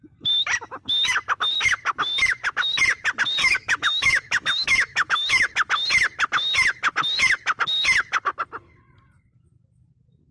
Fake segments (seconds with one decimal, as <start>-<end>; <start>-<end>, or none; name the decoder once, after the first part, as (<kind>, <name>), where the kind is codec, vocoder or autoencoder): 3.4-5.5 (autoencoder, DAC-VAE)